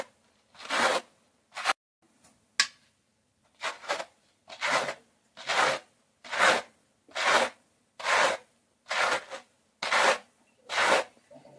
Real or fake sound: real